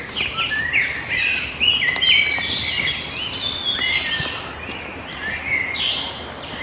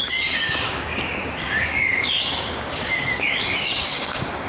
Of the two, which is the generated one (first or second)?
second